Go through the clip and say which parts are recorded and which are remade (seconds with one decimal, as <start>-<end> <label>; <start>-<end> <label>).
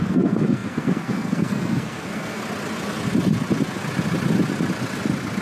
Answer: 0.0-2.4 remade; 2.4-5.4 recorded